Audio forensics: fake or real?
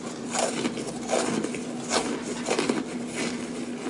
real